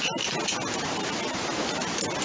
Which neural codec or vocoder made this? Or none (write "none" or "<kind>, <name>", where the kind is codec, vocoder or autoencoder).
none